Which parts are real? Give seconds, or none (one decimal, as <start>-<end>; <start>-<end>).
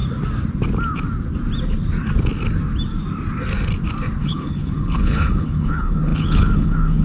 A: 0.0-4.2